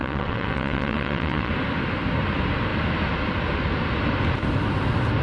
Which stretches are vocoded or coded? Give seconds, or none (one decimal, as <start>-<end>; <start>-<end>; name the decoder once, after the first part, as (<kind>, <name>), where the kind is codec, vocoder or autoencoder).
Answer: 0.0-1.5 (vocoder, WaveNeXt)